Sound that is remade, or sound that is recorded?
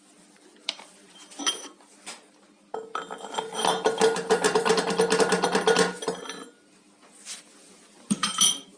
recorded